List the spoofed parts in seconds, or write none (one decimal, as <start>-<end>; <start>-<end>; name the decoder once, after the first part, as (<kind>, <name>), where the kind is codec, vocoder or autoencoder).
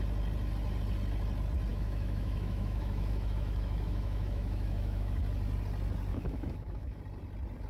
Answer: 1.7-5.2 (autoencoder, DAC-VAE); 6.1-7.0